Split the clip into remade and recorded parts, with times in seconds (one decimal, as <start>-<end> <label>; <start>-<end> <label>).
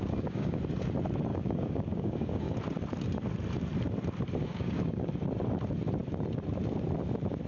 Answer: 0.0-0.6 remade; 0.6-1.3 recorded; 1.3-2.5 remade; 2.5-4.4 recorded; 4.4-5.1 remade; 5.1-7.5 recorded